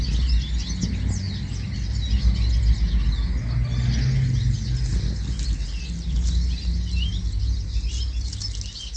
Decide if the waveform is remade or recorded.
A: recorded